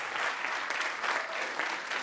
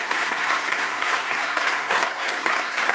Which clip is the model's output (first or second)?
second